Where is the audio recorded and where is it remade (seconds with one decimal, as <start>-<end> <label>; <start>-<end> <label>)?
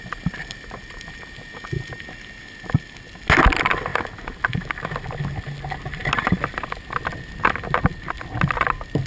0.0-9.1 recorded